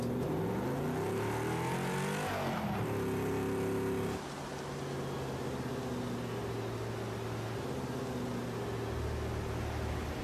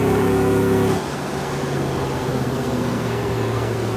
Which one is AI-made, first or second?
second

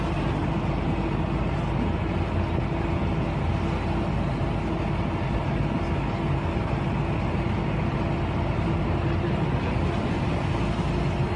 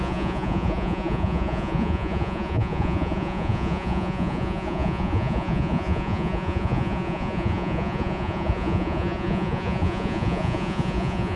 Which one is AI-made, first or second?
second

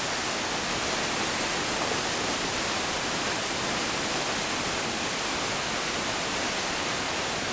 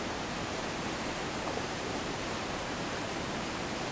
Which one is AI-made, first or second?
second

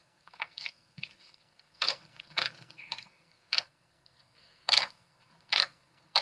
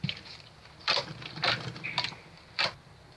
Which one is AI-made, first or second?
first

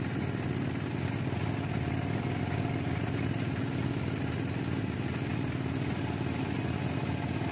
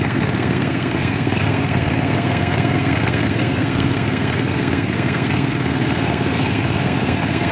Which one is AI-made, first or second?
second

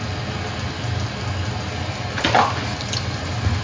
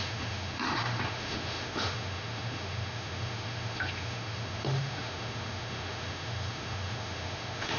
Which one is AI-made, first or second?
second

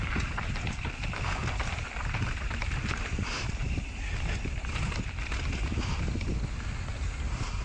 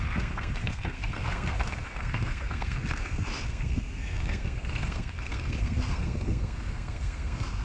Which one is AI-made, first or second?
second